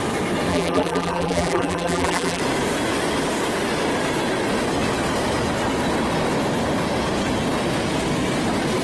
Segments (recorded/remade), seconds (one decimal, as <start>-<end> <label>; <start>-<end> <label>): 0.0-0.5 recorded; 0.5-2.4 remade; 2.4-8.8 recorded